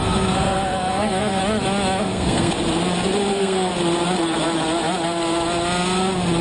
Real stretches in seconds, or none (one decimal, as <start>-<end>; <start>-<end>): 1.4-2.0; 2.5-3.3; 3.7-6.4